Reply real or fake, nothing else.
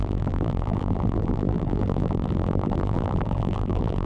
fake